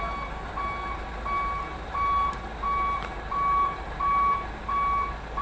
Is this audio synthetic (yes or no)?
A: no